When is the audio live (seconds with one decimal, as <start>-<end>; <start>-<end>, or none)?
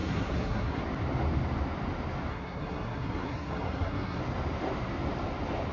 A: 0.8-2.3; 4.2-5.7